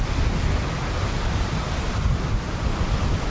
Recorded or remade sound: recorded